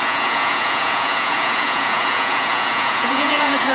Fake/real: fake